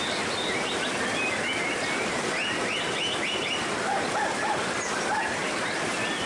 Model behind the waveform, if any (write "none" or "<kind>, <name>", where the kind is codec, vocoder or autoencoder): none